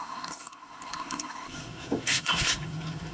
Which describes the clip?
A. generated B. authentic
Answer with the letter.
A